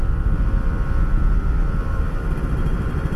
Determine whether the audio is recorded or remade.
remade